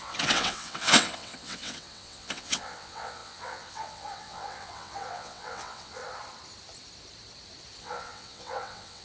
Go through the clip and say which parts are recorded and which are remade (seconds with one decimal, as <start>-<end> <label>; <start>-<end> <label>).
0.0-6.0 remade; 6.0-7.8 recorded; 7.8-9.0 remade